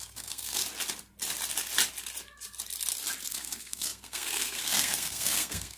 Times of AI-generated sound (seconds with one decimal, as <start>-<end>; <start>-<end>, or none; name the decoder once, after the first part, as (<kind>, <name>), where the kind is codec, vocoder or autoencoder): 0.0-0.6 (codec, SNAC); 3.3-5.8